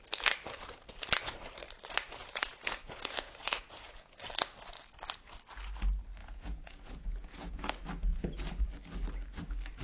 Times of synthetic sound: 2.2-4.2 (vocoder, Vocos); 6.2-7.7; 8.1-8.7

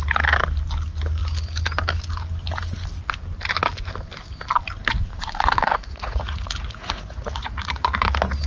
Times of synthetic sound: 5.1-8.1 (vocoder, Vocos)

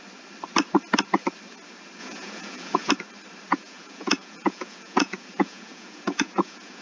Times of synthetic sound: 2.0-2.9 (vocoder, Vocos); 3.5-6.8